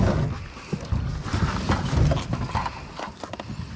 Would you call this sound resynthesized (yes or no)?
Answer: no